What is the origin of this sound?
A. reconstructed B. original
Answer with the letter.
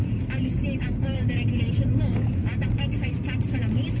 B